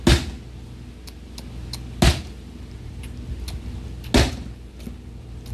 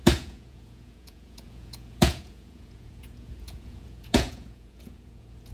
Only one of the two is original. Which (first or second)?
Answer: first